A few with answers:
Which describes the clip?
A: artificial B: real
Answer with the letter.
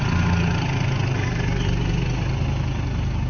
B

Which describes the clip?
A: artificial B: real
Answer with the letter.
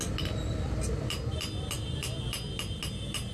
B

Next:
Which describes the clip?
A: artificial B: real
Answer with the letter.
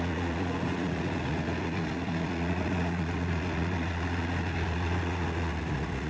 A